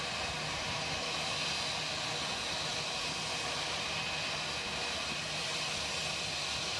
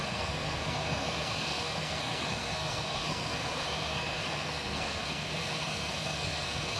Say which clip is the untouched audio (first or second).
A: first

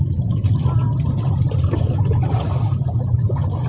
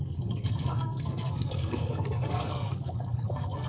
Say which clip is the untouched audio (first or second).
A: first